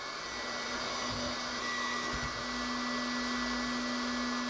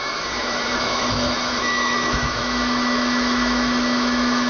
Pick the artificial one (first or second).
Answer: second